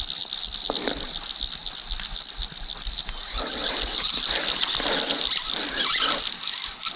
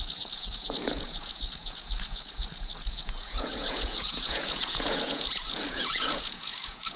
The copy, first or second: second